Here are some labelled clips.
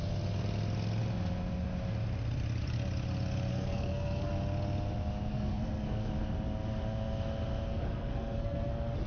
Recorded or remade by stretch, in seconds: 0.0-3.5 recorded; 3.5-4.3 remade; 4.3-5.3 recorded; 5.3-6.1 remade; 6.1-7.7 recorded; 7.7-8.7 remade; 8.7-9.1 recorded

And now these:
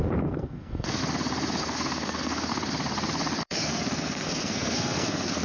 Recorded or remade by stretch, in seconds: 0.0-1.0 remade; 1.0-1.6 recorded; 1.6-2.5 remade; 2.5-3.4 recorded; 3.4-5.4 remade

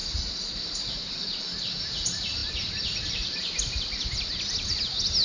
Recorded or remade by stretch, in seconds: 0.0-5.2 recorded

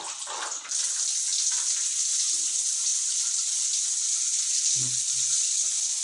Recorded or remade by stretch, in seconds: 0.0-6.0 recorded

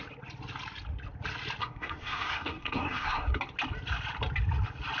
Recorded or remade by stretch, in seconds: 0.0-1.6 recorded; 1.6-3.4 remade; 3.4-5.0 recorded